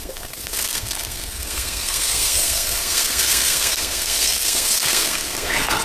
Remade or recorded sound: remade